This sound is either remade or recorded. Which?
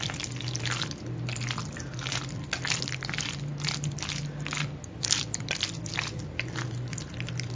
recorded